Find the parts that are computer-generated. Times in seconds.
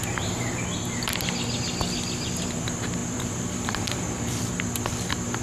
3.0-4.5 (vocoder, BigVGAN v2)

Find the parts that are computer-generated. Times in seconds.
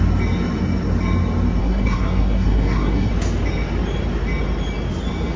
1.6-3.1 (codec, SNAC)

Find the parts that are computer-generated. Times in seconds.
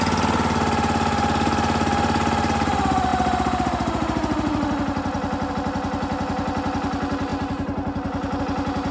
none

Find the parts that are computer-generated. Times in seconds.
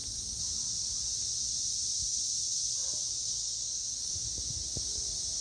3.4-4.1 (codec, SNAC)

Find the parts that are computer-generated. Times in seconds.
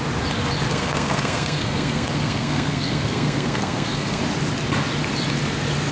0.7-4.2 (codec, SNAC)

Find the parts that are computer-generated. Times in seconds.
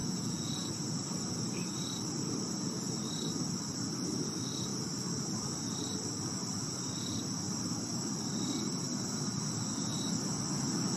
0.0-0.7 (vocoder, Vocos)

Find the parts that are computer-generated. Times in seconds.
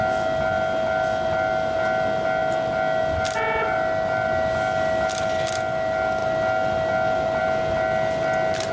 none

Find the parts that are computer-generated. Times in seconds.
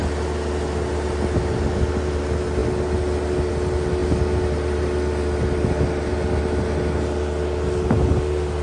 none